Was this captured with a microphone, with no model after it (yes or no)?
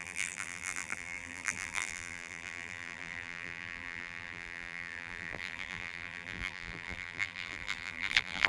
no